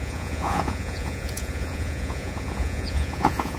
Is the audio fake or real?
fake